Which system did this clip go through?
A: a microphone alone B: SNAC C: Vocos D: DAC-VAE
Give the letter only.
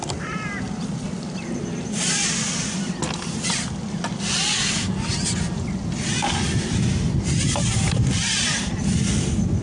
A